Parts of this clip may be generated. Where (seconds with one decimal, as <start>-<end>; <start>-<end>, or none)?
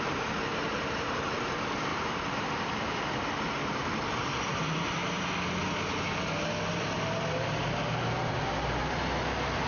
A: 0.0-5.0; 7.3-8.8